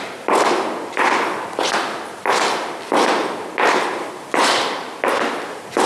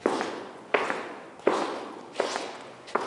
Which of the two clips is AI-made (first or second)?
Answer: second